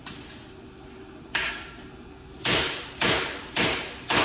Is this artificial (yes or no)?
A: no